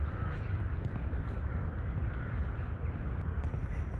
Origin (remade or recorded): remade